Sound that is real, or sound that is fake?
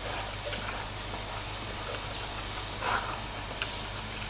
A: real